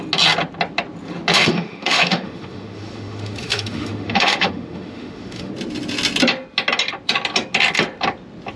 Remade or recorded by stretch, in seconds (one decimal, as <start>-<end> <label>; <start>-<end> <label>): 0.0-1.3 recorded; 1.3-5.5 remade; 5.5-8.6 recorded